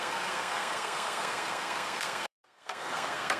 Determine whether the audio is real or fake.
fake